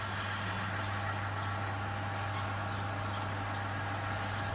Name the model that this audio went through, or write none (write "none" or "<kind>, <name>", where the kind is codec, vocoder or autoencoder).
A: none